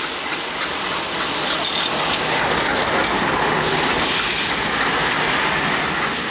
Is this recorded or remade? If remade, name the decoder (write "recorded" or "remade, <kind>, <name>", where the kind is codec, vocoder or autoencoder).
recorded